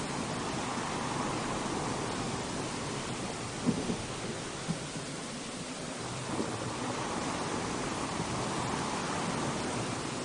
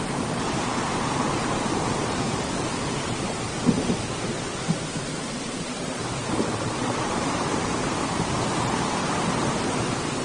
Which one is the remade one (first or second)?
second